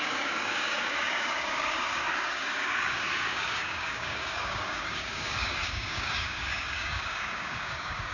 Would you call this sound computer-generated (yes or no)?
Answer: yes